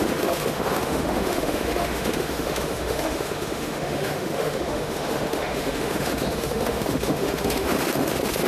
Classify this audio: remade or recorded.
remade